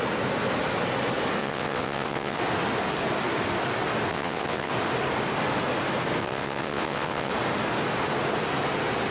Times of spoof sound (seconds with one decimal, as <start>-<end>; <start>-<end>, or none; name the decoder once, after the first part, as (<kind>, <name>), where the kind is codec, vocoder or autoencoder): 1.4-2.4 (vocoder, WaveNeXt); 4.1-4.7; 6.2-7.3